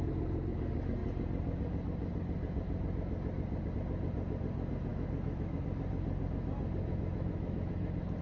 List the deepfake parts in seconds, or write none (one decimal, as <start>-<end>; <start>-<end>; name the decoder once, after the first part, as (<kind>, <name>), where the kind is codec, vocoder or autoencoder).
4.9-5.6 (autoencoder, DAC-VAE); 6.9-7.7